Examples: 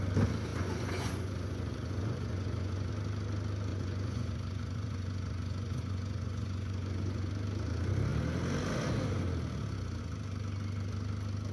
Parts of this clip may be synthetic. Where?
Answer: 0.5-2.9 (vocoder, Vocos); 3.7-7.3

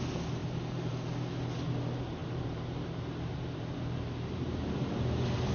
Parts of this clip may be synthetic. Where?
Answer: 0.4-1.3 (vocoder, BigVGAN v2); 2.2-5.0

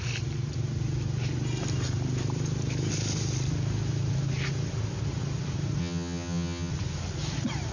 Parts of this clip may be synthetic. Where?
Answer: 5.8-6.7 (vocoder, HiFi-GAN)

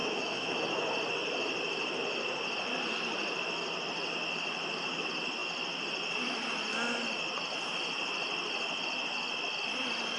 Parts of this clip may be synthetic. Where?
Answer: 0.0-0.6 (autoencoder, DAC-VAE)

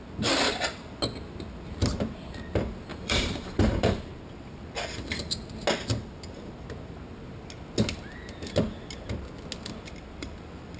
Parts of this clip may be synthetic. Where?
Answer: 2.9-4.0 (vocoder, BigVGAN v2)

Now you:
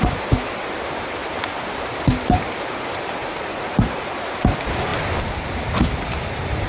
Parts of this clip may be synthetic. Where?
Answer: 3.2-4.1 (vocoder, Vocos)